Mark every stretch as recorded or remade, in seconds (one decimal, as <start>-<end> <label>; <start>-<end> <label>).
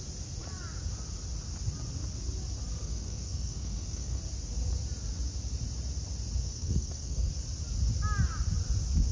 0.0-2.8 recorded; 2.8-4.2 remade; 4.2-6.4 recorded; 6.4-7.3 remade; 7.3-9.1 recorded